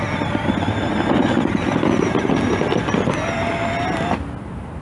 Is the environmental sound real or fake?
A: real